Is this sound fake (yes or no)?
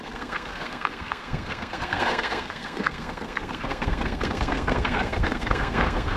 yes